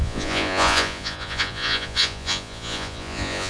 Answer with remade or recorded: remade